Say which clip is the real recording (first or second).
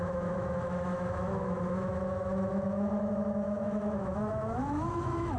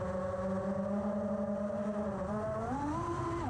second